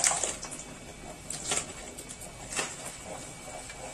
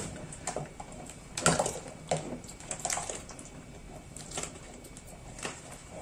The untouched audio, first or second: first